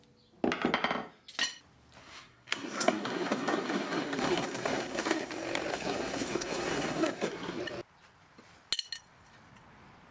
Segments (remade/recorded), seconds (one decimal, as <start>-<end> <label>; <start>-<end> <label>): 0.0-2.0 recorded; 2.0-5.3 remade; 5.3-5.7 recorded; 5.7-7.6 remade; 7.6-10.1 recorded